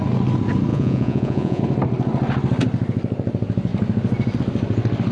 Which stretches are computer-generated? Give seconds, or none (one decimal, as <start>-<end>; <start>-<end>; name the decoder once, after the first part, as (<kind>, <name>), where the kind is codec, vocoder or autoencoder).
0.7-1.6 (vocoder, Vocos)